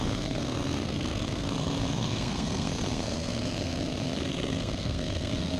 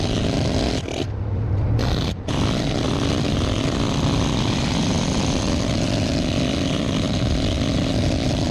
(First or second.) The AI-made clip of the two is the first